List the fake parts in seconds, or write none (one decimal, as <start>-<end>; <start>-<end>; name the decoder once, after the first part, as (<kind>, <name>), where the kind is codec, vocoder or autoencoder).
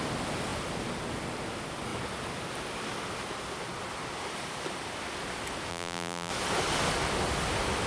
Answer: 5.7-6.3 (vocoder, BigVGAN v2)